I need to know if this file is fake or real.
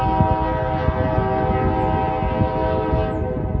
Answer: real